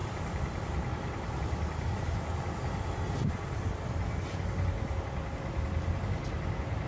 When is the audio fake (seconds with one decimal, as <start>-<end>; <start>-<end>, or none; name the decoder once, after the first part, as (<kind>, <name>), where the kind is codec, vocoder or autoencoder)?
none